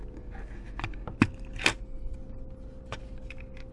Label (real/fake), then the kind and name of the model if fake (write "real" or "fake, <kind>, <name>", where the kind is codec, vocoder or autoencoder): real